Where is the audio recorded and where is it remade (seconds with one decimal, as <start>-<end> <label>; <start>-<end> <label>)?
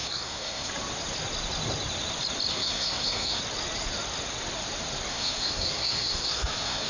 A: 0.0-0.7 remade; 0.7-2.5 recorded; 2.5-3.4 remade; 3.4-5.1 recorded; 5.1-6.9 remade